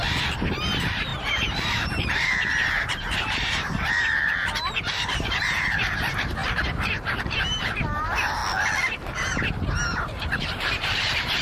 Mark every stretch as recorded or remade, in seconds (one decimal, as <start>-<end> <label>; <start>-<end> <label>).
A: 0.0-8.4 remade; 8.4-10.0 recorded; 10.0-11.4 remade